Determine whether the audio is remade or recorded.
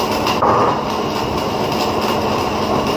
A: recorded